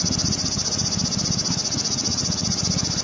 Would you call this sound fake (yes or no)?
no